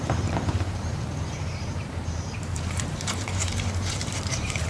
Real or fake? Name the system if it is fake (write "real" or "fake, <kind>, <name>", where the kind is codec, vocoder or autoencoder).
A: fake, vocoder, BigVGAN v2